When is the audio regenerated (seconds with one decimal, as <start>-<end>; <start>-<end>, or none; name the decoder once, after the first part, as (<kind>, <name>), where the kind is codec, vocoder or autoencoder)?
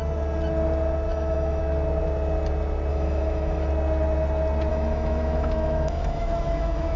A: 1.1-1.6 (autoencoder, DAC-VAE); 2.9-3.7; 4.7-7.0